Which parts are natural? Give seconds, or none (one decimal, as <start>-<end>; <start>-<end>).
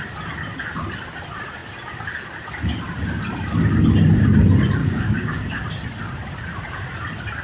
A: 0.0-4.8; 5.4-7.4